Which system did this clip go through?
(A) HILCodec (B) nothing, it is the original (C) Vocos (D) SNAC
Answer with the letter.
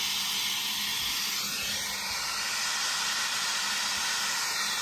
B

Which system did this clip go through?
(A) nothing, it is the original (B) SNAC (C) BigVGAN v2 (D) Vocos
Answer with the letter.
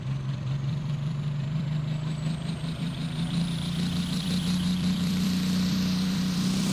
C